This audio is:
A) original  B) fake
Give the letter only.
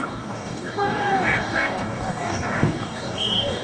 B